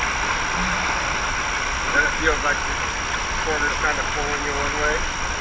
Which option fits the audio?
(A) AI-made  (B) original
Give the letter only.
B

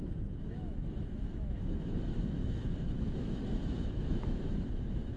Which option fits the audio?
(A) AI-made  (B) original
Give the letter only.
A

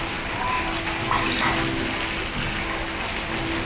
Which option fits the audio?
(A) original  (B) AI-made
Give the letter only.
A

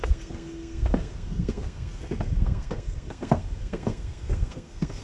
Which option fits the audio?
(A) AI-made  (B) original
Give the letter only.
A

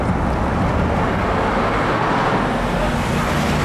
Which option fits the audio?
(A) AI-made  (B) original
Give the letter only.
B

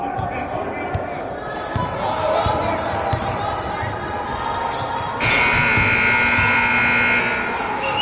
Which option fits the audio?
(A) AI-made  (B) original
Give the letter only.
B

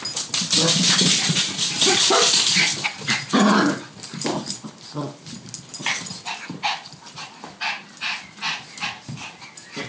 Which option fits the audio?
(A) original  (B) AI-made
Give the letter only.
A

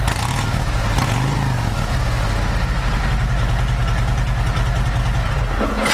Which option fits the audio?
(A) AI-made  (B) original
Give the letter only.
B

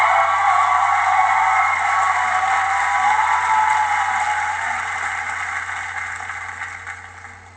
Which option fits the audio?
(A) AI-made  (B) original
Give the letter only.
B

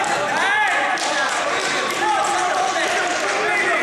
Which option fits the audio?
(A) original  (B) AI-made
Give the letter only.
A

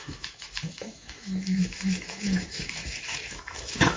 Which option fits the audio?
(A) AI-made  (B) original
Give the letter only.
A